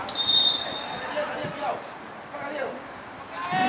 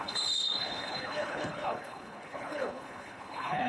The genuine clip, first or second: first